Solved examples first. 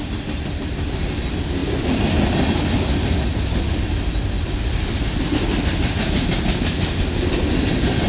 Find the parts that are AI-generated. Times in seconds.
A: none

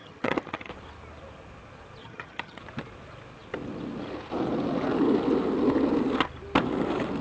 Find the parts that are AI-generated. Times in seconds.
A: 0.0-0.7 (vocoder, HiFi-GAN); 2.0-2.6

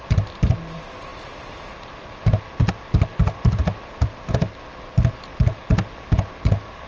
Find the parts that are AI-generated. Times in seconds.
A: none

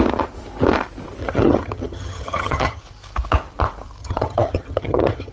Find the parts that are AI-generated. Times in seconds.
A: 1.2-2.8 (vocoder, HiFi-GAN); 4.0-5.3